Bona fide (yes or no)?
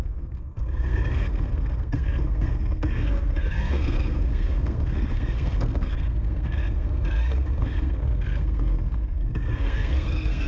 no